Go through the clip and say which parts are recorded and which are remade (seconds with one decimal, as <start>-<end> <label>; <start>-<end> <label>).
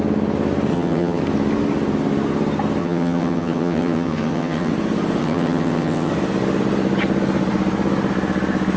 0.0-0.7 recorded; 0.7-1.2 remade; 1.2-2.8 recorded; 2.8-4.7 remade; 4.7-5.2 recorded; 5.2-6.1 remade; 6.1-8.8 recorded